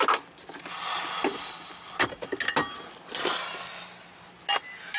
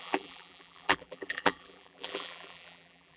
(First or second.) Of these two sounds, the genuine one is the first